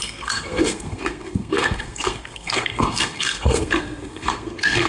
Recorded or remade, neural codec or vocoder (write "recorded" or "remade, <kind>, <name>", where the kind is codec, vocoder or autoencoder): remade, codec, SNAC